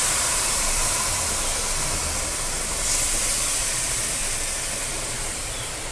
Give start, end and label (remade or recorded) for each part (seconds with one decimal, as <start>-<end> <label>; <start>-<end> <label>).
0.0-1.2 remade; 1.2-3.6 recorded; 3.6-4.2 remade; 4.2-4.7 recorded; 4.7-5.9 remade